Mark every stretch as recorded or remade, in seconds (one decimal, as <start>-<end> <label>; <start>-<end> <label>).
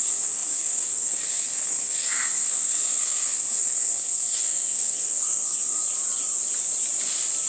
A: 0.0-5.8 remade; 5.8-7.5 recorded